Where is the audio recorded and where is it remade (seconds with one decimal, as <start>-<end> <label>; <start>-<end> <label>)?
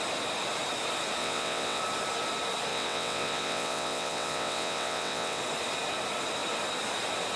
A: 0.0-1.2 recorded; 1.2-1.8 remade; 1.8-2.7 recorded; 2.7-5.4 remade; 5.4-7.4 recorded